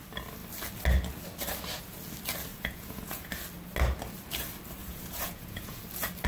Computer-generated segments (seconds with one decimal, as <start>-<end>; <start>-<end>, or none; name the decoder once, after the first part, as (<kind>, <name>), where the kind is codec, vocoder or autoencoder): 2.5-3.3 (vocoder, Vocos); 4.8-5.8